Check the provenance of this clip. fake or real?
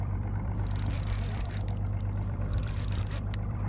fake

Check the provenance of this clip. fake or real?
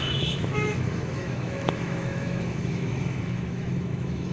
fake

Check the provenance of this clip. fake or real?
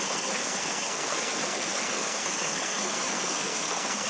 fake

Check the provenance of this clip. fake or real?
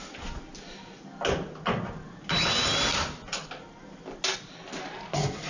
real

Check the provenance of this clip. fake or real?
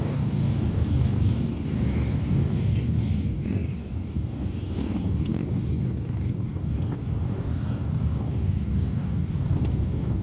fake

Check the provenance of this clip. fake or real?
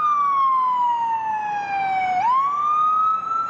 real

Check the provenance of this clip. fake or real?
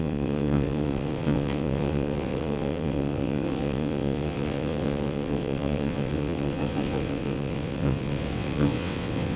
fake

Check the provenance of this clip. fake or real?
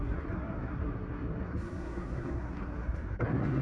fake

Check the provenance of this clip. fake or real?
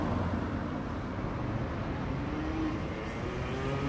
real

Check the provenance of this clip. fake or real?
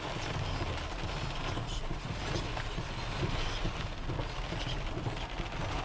real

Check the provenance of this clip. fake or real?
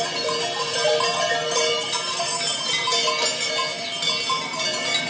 real